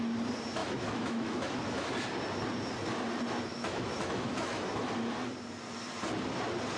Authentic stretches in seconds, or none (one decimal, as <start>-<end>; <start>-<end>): 0.0-0.6; 1.9-3.5; 5.0-6.8